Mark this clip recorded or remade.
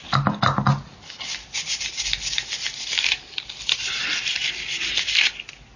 recorded